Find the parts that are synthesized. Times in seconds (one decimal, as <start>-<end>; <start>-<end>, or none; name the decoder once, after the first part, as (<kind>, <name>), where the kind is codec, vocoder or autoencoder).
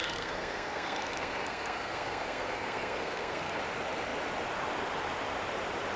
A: 0.0-3.6 (codec, SNAC)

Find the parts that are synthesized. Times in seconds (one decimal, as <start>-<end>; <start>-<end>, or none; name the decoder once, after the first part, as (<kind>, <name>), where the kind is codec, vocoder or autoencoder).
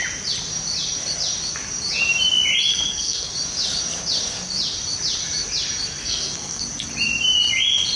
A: 2.7-3.3 (codec, SNAC); 6.0-6.6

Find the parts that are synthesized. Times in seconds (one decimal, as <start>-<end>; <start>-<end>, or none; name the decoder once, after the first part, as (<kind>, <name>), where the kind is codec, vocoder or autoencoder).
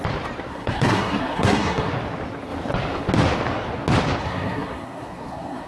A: 0.5-1.9 (codec, SNAC); 4.2-5.7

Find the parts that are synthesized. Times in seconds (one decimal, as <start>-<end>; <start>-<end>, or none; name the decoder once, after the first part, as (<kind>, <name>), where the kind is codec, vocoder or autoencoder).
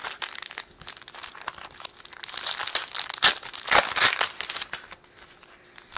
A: none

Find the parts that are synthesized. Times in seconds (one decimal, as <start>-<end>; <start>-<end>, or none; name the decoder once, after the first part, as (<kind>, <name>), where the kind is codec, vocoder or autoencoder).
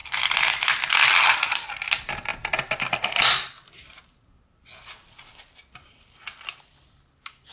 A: none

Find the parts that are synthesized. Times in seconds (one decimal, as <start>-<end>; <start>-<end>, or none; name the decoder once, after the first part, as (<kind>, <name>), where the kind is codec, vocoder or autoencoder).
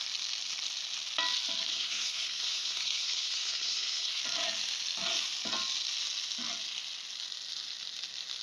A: 1.7-4.2 (codec, SNAC)